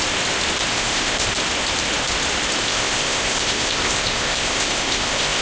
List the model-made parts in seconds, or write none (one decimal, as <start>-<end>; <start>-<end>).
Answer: 0.7-1.3; 2.6-5.4